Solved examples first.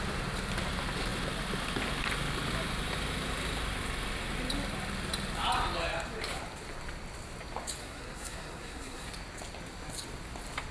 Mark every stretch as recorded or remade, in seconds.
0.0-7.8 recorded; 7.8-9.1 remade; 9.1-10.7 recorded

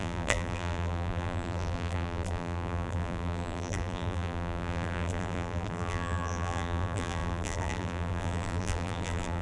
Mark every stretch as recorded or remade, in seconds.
0.0-9.4 remade